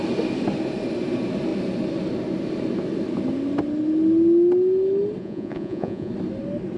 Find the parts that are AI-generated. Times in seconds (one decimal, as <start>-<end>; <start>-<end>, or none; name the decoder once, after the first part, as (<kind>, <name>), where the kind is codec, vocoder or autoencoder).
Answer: 5.2-6.1 (vocoder, Vocos)